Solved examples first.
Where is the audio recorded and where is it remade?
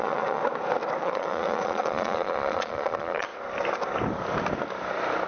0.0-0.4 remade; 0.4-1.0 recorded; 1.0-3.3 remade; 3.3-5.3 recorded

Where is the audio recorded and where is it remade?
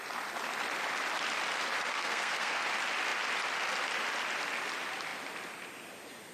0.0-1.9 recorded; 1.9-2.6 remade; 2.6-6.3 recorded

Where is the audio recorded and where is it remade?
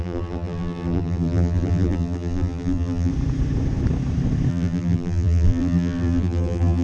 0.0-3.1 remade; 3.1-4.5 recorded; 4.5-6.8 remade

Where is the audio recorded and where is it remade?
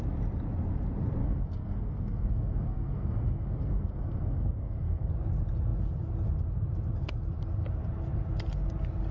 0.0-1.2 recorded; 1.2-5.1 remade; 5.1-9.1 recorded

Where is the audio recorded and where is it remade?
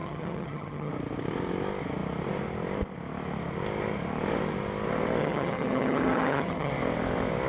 0.0-0.9 remade; 0.9-5.2 recorded; 5.2-6.7 remade; 6.7-7.5 recorded